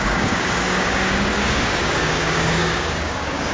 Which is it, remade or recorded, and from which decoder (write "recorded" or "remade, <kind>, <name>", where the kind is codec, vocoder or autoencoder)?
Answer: remade, codec, DAC